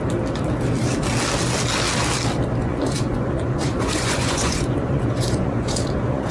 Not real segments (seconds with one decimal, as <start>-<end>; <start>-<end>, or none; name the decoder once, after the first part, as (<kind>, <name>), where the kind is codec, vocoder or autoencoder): 2.6-6.3 (vocoder, Vocos)

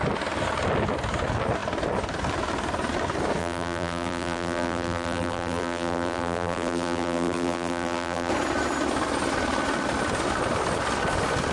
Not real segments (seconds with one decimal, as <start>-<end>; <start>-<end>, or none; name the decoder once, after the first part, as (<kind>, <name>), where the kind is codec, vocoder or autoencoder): 3.4-8.3 (vocoder, BigVGAN v2)

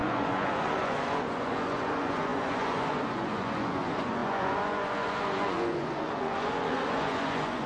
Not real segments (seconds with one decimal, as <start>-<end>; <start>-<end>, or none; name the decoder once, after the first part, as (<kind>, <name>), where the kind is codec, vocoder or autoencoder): 0.0-7.7 (vocoder, Vocos)

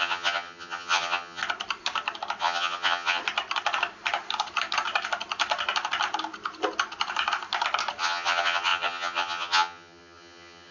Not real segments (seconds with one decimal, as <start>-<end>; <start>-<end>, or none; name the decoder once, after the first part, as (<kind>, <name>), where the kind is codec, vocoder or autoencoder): 0.0-1.4 (vocoder, HiFi-GAN); 2.4-3.2; 8.0-10.7

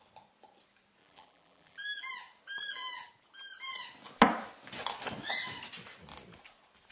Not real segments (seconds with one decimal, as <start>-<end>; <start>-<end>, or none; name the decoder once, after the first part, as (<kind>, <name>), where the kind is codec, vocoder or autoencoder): 1.0-2.1 (vocoder, BigVGAN v2); 2.6-3.1